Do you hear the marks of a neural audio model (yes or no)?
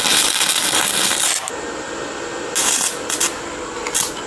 no